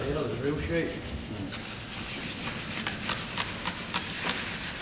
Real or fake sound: real